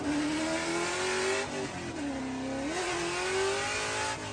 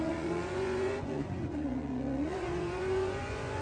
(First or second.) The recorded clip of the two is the first